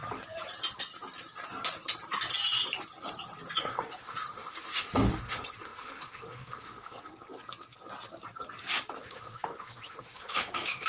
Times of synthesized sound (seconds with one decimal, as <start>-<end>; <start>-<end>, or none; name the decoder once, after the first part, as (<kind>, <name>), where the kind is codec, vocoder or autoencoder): 3.6-7.1 (autoencoder, DAC-VAE); 9.0-10.9